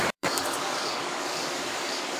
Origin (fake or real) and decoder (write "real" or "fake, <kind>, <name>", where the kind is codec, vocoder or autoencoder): fake, codec, DAC